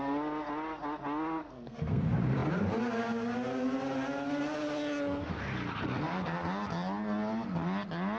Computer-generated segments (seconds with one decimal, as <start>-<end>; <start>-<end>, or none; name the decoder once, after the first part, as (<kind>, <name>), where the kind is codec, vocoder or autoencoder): 1.4-2.0 (codec, SNAC)